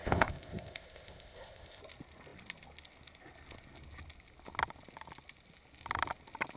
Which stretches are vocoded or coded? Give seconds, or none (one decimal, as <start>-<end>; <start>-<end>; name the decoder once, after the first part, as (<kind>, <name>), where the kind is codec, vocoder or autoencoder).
0.0-1.8 (codec, ZipCodec)